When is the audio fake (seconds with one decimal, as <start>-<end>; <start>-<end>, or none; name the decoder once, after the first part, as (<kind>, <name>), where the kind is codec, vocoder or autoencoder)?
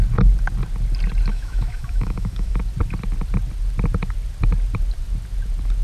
1.3-2.6 (autoencoder, DAC-VAE)